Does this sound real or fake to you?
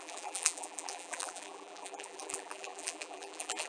fake